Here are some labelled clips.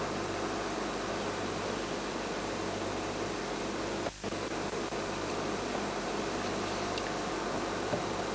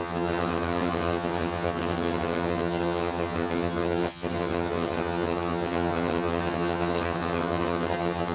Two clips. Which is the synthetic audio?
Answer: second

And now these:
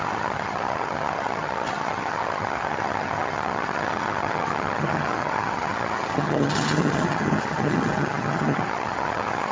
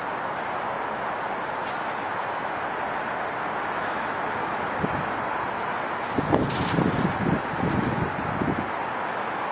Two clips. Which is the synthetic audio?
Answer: first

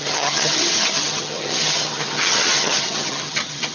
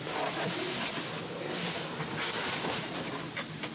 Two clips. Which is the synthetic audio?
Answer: first